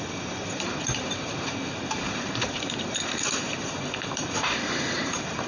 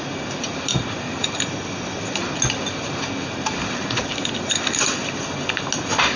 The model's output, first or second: first